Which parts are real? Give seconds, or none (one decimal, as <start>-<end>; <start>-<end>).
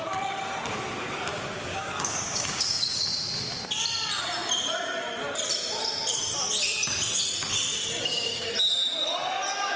0.0-1.3; 3.0-7.7; 8.5-9.8